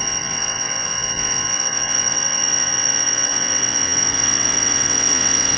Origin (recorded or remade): remade